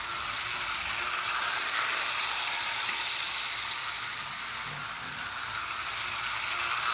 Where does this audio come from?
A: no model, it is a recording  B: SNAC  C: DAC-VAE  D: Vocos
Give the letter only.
A